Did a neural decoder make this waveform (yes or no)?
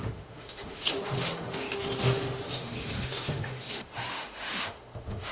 yes